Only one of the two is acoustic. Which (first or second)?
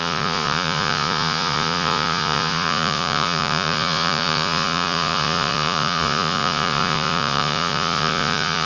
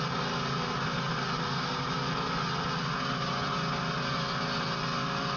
second